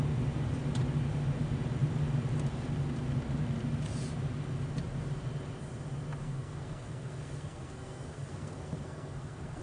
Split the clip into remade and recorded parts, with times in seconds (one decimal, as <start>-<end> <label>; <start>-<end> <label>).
0.0-6.2 recorded; 6.2-9.6 remade